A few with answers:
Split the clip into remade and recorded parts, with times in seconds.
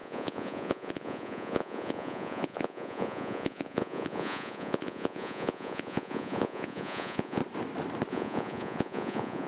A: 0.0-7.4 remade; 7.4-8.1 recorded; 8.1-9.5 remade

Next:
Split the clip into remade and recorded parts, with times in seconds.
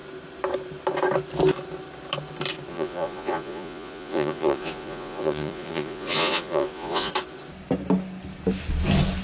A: 0.0-2.7 recorded; 2.7-7.1 remade; 7.1-9.2 recorded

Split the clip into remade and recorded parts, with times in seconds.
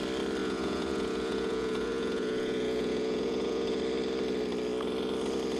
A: 0.0-0.4 recorded; 0.4-3.8 remade; 3.8-5.6 recorded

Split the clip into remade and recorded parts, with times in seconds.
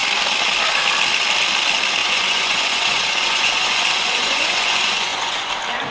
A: 0.0-2.0 recorded; 2.0-5.5 remade; 5.5-5.9 recorded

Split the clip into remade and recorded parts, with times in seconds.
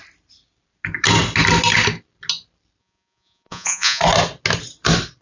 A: 0.0-2.8 recorded; 2.8-4.0 remade; 4.0-5.2 recorded